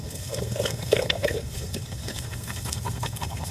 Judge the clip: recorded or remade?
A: remade